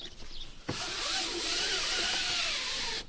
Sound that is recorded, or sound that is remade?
recorded